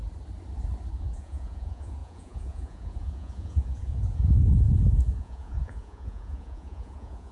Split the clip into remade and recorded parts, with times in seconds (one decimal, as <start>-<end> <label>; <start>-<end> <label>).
0.0-0.9 recorded; 0.9-7.3 remade